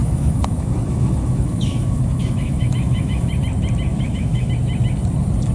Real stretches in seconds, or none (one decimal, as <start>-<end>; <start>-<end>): 3.3-3.9; 4.5-5.5